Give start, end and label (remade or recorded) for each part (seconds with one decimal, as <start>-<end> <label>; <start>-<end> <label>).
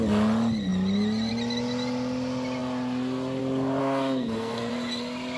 0.0-3.8 recorded; 3.8-4.7 remade; 4.7-5.4 recorded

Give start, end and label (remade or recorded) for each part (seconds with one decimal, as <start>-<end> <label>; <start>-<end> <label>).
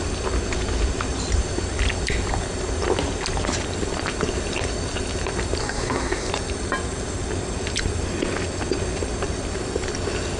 0.0-5.6 recorded; 5.6-6.3 remade; 6.3-10.4 recorded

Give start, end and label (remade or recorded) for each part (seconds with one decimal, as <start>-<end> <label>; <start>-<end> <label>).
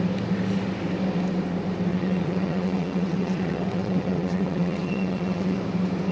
0.0-1.9 recorded; 1.9-5.6 remade; 5.6-6.1 recorded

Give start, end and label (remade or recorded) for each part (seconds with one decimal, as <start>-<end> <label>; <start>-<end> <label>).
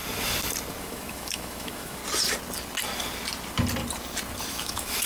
0.0-0.8 recorded; 0.8-2.0 remade; 2.0-4.5 recorded; 4.5-5.1 remade